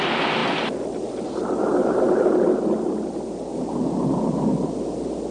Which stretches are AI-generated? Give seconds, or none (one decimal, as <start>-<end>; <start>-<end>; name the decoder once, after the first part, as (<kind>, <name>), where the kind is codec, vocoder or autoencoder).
none